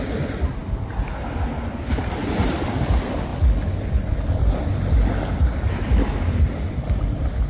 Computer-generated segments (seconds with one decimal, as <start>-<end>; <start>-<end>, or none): none